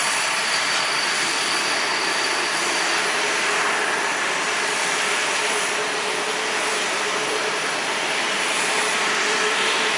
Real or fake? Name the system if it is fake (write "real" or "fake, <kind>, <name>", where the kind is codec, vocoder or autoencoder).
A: fake, vocoder, BigVGAN v2